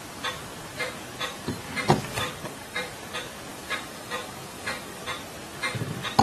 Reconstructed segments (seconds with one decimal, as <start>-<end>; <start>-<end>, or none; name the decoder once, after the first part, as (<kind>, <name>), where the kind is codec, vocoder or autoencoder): 2.1-2.9 (codec, DAC); 3.5-5.0